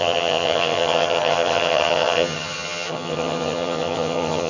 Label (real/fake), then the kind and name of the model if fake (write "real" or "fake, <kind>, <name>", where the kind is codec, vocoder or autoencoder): fake, vocoder, HiFi-GAN